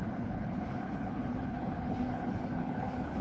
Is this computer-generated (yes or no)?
yes